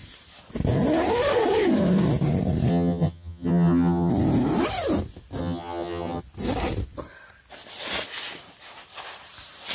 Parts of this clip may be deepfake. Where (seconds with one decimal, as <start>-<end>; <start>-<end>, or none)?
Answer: 2.7-4.1; 5.4-6.2